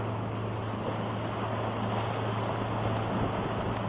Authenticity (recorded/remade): recorded